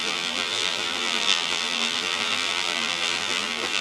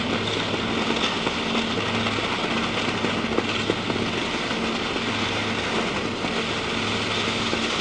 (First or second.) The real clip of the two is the second